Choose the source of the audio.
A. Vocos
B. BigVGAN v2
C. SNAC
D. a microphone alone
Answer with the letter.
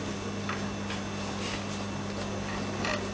D